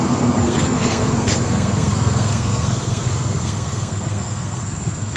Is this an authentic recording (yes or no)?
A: no